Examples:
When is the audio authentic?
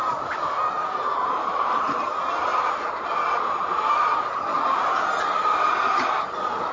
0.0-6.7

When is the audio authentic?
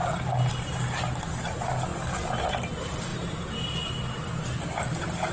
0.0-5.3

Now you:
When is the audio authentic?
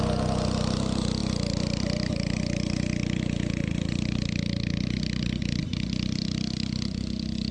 0.0-7.5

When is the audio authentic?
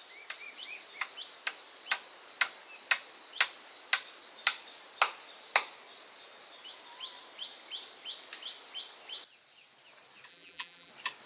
0.0-10.3; 10.9-11.3